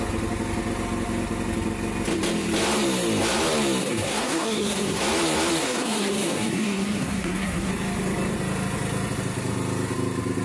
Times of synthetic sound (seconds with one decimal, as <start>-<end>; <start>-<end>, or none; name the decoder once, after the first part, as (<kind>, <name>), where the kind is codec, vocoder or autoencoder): 3.8-5.0 (codec, SNAC); 5.6-7.7

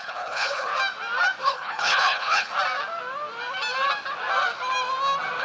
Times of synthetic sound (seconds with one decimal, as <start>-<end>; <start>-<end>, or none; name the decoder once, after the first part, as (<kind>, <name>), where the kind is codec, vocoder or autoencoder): 0.0-0.7 (codec, HILCodec); 1.4-2.5

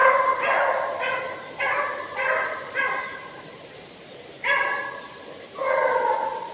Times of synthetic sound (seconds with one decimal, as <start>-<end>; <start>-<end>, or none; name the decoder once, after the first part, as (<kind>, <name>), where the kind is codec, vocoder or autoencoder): 3.1-4.8 (vocoder, BigVGAN v2)